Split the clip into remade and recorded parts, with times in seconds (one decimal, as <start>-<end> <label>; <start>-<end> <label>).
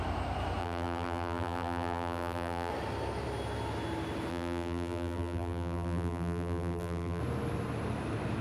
0.0-0.6 recorded; 0.6-2.7 remade; 2.7-4.3 recorded; 4.3-7.2 remade; 7.2-8.4 recorded